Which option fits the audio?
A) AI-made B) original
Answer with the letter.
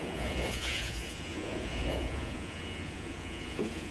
A